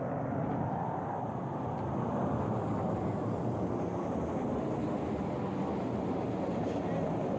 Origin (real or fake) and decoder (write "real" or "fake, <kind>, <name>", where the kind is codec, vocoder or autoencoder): fake, vocoder, BigVGAN v2